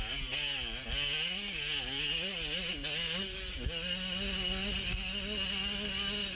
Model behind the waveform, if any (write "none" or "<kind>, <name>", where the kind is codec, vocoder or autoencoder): none